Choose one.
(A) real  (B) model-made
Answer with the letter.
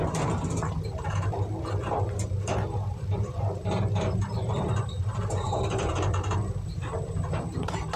B